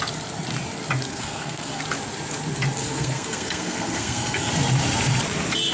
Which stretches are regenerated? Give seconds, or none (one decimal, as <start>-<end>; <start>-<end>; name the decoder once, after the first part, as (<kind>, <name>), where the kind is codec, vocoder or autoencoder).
1.1-1.8 (codec, SNAC); 2.8-4.5